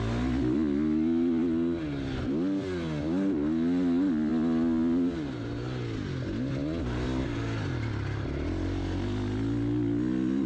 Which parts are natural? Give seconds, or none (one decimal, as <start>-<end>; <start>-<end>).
0.0-10.5